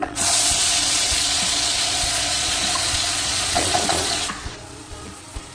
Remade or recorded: remade